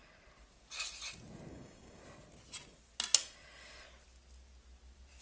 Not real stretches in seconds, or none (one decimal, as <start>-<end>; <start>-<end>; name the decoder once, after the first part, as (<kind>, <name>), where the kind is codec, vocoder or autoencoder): 1.5-2.0 (codec, DAC)